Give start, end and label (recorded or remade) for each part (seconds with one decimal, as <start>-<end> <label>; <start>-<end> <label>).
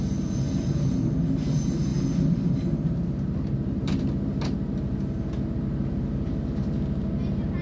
0.0-7.6 recorded